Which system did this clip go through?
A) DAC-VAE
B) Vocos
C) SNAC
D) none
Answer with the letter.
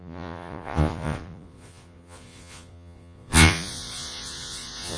B